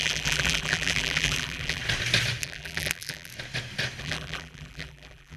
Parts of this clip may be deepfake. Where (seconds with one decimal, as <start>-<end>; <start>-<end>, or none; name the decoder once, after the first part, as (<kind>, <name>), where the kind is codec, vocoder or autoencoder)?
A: 0.0-1.8 (vocoder, BigVGAN v2); 2.4-3.3; 4.0-5.4